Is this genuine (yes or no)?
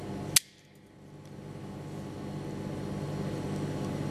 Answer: yes